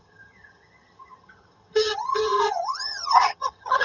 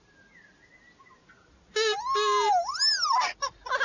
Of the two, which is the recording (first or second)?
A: second